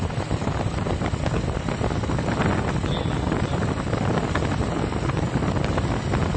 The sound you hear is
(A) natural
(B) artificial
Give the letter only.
A